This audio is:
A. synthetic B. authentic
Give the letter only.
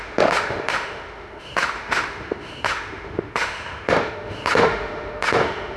A